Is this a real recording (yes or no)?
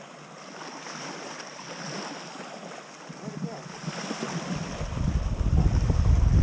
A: yes